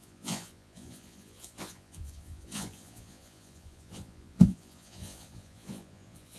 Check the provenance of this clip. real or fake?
fake